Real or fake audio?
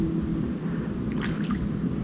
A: real